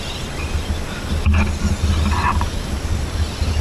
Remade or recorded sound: recorded